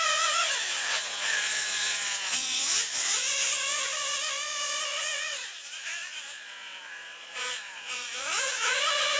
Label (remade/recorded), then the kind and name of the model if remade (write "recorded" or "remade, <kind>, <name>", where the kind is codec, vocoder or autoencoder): remade, vocoder, Vocos